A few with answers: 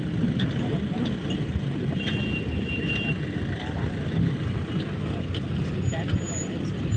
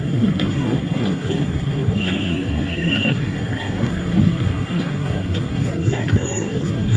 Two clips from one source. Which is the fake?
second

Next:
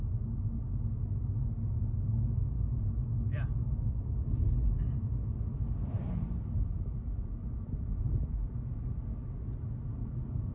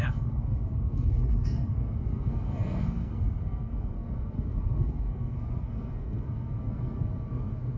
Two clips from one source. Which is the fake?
second